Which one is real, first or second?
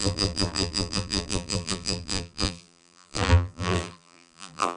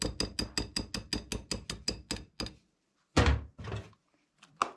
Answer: second